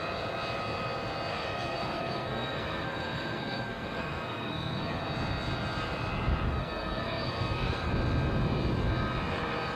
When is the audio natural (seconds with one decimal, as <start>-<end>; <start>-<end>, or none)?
0.0-1.3; 5.0-6.6; 7.9-9.8